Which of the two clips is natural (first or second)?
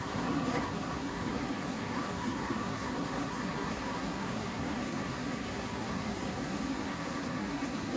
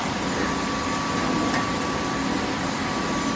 second